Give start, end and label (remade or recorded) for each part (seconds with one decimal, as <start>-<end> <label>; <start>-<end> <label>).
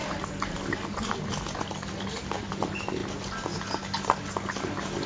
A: 0.0-5.1 recorded